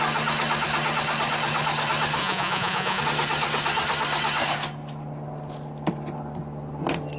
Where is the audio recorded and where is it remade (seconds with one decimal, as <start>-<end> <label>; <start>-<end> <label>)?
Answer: 0.0-2.2 recorded; 2.2-3.0 remade; 3.0-7.2 recorded

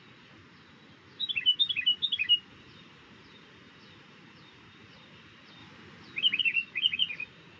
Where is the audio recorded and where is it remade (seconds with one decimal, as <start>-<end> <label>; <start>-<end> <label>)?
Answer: 0.0-0.4 remade; 0.4-2.5 recorded; 2.5-5.6 remade; 5.6-6.4 recorded; 6.4-7.6 remade

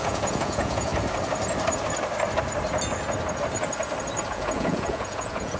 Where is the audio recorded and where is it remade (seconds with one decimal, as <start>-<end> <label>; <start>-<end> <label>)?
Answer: 0.0-0.9 remade; 0.9-4.3 recorded; 4.3-5.6 remade

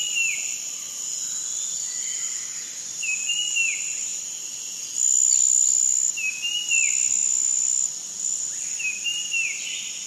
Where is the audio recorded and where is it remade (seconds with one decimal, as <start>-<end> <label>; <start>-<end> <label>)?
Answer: 0.0-10.1 recorded